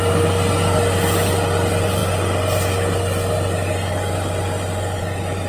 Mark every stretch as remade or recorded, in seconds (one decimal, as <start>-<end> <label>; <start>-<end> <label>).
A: 0.0-5.5 recorded